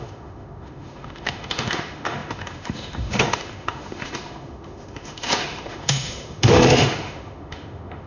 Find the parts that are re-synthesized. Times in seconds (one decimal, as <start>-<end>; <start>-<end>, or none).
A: 0.0-8.1